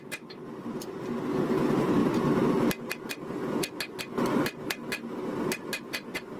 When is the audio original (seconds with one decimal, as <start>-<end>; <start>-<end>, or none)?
0.0-6.4